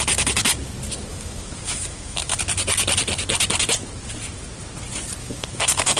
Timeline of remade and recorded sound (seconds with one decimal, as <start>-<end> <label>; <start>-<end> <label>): 0.0-1.1 recorded; 1.1-2.4 remade; 2.4-5.2 recorded; 5.2-6.0 remade